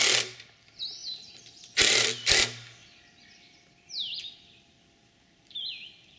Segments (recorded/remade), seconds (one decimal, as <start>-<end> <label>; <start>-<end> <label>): 0.0-6.2 remade